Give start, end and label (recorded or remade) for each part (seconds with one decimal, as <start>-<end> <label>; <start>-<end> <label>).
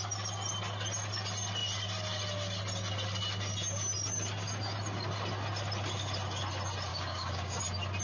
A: 0.0-6.9 recorded; 6.9-7.6 remade; 7.6-8.0 recorded